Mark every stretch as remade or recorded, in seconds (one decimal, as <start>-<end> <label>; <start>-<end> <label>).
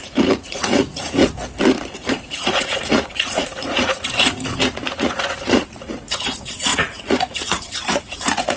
0.0-1.2 remade; 1.2-2.1 recorded; 2.1-8.6 remade